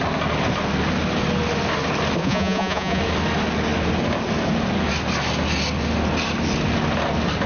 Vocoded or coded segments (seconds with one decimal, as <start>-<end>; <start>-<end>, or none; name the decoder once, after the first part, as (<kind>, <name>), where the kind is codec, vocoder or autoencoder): 2.2-3.0 (vocoder, Vocos)